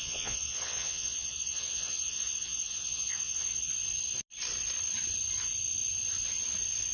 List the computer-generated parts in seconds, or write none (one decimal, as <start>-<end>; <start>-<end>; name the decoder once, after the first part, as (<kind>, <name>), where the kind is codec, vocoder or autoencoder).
0.0-3.7 (vocoder, Vocos)